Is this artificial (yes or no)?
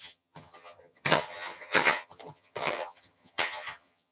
yes